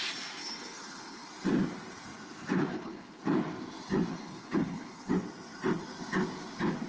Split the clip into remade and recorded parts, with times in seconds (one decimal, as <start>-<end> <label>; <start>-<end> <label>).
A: 0.0-0.4 recorded; 0.4-1.3 remade; 1.3-2.7 recorded; 2.7-3.2 remade; 3.2-4.1 recorded; 4.1-5.1 remade; 5.1-6.9 recorded